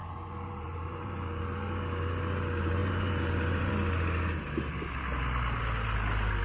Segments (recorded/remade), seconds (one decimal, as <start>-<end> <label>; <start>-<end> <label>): 0.0-1.4 remade; 1.4-2.8 recorded; 2.8-3.7 remade; 3.7-6.4 recorded